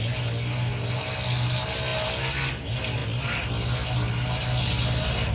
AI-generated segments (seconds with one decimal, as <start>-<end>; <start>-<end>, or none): none